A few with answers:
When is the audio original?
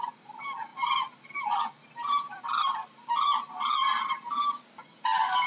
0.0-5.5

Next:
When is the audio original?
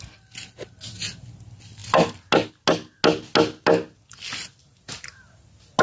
0.0-5.8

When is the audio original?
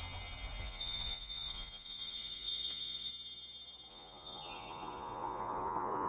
0.0-0.6; 3.1-3.9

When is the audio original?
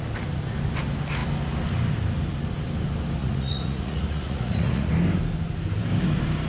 0.0-3.2; 4.9-6.5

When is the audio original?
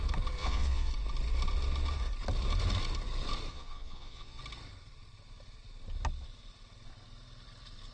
0.0-0.4; 0.9-3.5; 4.4-7.9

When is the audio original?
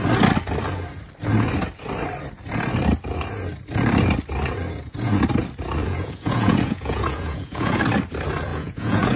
0.0-5.8; 7.8-8.5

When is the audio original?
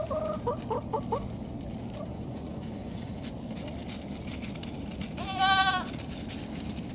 0.0-2.1; 3.3-6.9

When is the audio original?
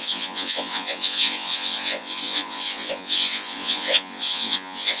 none